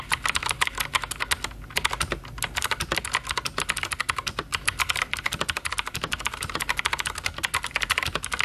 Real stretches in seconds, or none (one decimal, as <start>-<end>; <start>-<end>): 0.0-4.5; 6.8-8.4